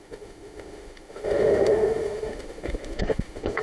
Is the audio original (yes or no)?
no